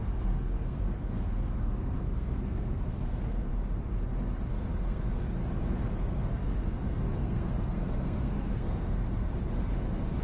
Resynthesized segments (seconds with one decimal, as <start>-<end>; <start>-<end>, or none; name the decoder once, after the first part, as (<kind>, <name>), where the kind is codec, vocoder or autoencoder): 0.0-3.5 (codec, SNAC); 4.5-5.4; 5.9-9.3